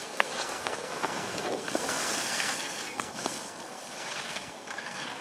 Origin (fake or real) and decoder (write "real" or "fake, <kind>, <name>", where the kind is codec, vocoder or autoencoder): fake, codec, SNAC